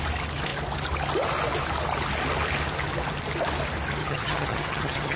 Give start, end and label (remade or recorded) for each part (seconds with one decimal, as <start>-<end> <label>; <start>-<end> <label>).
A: 0.0-4.0 recorded; 4.0-5.2 remade